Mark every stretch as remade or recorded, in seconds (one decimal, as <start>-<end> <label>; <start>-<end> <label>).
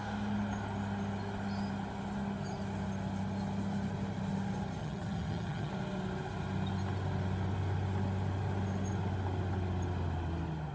0.0-4.8 recorded; 4.8-5.7 remade; 5.7-10.7 recorded